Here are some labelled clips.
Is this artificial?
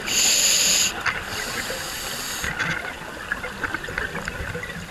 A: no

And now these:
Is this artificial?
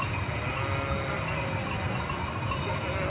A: no